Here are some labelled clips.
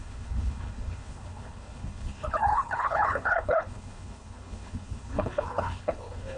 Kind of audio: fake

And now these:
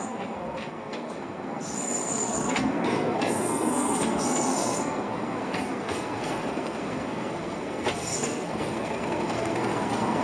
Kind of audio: fake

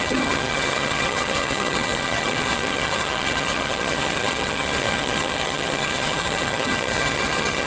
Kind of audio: fake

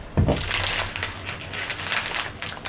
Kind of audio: real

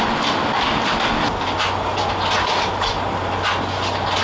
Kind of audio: real